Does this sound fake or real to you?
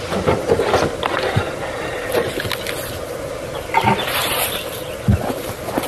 real